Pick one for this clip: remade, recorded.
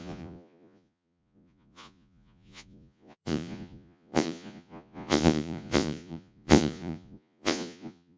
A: remade